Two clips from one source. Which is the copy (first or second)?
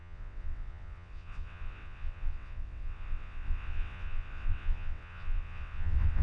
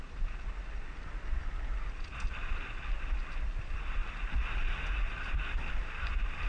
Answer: first